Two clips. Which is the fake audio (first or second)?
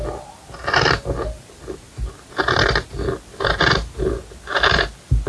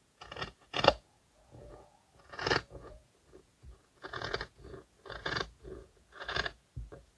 second